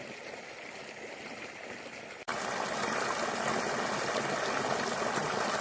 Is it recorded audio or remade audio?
recorded